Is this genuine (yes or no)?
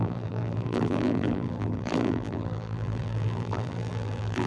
no